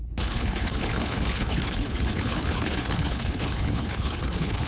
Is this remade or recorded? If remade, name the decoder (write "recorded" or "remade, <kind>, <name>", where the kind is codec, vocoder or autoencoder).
remade, codec, HILCodec